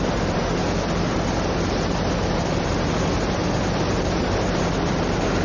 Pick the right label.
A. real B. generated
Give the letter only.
B